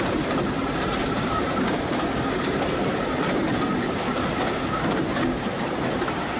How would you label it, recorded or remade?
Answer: remade